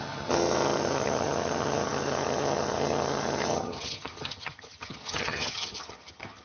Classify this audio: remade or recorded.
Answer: remade